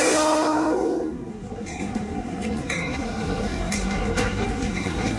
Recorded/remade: remade